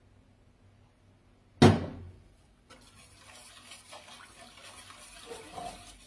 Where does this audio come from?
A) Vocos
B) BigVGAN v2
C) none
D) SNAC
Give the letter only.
C